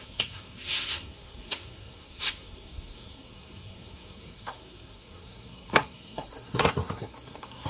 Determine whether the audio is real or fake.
fake